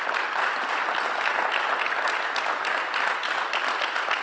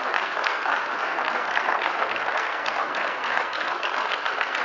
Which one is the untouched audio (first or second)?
first